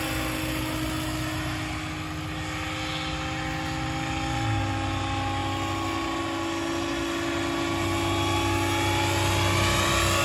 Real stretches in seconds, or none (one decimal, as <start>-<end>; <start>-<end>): 0.0-10.2